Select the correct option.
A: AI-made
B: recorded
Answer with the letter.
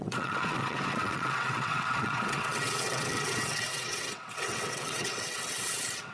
A